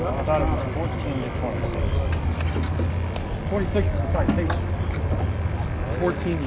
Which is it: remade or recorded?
recorded